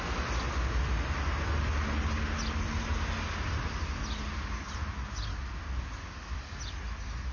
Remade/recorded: recorded